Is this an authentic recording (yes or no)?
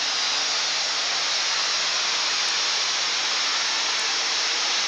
yes